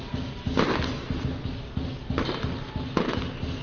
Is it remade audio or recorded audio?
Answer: recorded